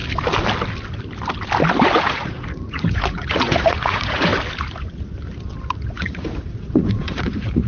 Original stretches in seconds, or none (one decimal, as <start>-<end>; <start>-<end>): 0.0-2.0; 4.3-5.9